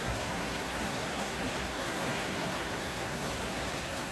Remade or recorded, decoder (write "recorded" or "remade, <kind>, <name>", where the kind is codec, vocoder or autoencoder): remade, codec, SNAC